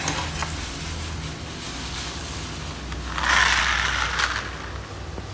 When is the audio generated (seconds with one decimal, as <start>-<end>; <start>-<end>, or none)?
none